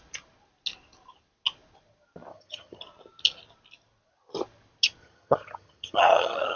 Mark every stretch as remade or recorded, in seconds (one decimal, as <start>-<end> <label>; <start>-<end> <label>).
0.0-2.3 recorded; 2.3-2.8 remade; 2.8-5.0 recorded; 5.0-6.6 remade